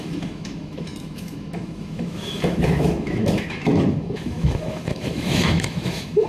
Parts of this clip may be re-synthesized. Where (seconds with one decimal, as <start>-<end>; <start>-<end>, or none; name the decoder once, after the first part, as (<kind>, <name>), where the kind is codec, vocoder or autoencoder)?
0.0-6.3 (autoencoder, DAC-VAE)